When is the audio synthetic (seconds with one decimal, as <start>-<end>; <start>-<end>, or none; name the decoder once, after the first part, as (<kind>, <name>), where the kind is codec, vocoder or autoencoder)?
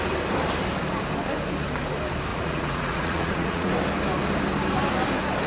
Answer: 2.3-3.7 (vocoder, Vocos)